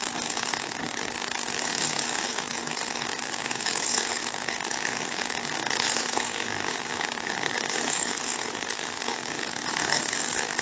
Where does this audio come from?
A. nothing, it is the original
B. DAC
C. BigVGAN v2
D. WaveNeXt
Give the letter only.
B